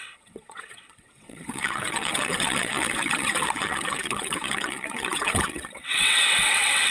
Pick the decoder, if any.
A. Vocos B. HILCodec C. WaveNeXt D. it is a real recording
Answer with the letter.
C